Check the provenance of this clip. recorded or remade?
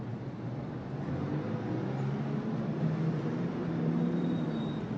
recorded